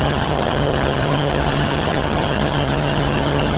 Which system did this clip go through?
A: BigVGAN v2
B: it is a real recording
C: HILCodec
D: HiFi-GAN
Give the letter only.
D